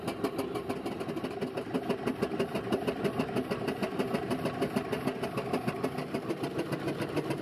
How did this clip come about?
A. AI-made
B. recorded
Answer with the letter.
B